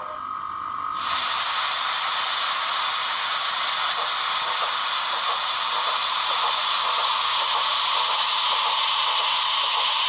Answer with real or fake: real